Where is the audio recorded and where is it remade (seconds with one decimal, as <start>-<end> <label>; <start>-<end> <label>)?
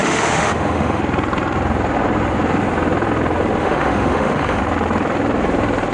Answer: 0.0-1.0 remade; 1.0-3.6 recorded; 3.6-4.6 remade; 4.6-5.9 recorded